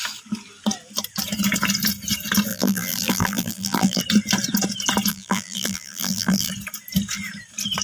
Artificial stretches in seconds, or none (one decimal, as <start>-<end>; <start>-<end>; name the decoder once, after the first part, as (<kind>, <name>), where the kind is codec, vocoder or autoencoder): 2.5-4.0 (vocoder, BigVGAN v2); 5.1-6.5